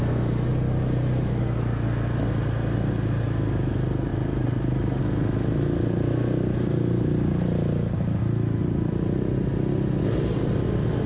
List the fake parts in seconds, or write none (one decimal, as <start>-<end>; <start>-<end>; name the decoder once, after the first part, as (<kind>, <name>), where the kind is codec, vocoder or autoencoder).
4.1-5.0 (vocoder, BigVGAN v2)